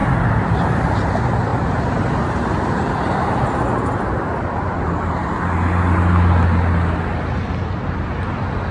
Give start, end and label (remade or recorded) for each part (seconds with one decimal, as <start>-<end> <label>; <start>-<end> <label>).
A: 0.0-1.1 remade; 1.1-1.5 recorded; 1.5-3.9 remade; 3.9-8.7 recorded